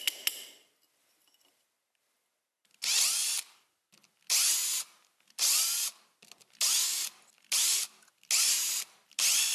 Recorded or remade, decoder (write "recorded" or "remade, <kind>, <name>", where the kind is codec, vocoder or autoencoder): recorded